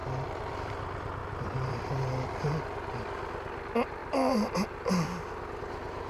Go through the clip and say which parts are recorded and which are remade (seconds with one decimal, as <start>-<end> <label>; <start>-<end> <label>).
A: 0.0-0.6 remade; 0.6-1.2 recorded; 1.2-2.5 remade; 2.5-6.1 recorded

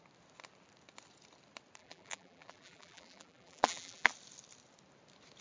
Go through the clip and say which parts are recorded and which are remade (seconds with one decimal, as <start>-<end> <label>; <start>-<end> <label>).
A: 0.0-1.8 recorded; 1.8-4.1 remade; 4.1-5.4 recorded

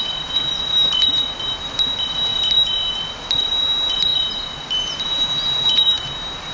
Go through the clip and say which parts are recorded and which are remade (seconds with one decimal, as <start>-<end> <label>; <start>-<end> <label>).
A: 0.0-6.5 recorded

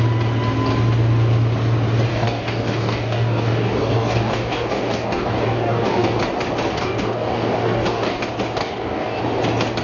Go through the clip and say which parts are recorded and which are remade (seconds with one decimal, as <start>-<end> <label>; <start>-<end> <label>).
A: 0.0-2.1 recorded; 2.1-6.2 remade; 6.2-6.7 recorded; 6.7-8.2 remade; 8.2-8.6 recorded; 8.6-9.2 remade; 9.2-9.8 recorded

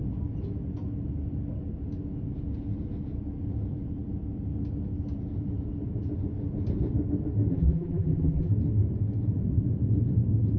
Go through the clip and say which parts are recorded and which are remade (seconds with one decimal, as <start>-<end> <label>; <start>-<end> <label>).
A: 0.0-7.5 recorded; 7.5-8.5 remade; 8.5-10.6 recorded

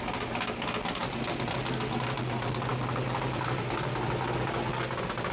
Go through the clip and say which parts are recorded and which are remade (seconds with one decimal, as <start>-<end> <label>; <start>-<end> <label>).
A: 0.0-5.3 recorded

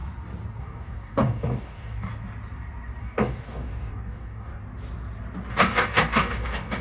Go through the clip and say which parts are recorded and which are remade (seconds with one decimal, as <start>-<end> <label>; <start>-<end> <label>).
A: 0.0-0.6 recorded; 0.6-2.1 remade; 2.1-3.0 recorded; 3.0-4.6 remade; 4.6-5.5 recorded; 5.5-6.8 remade